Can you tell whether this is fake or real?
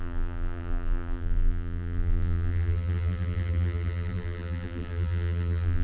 fake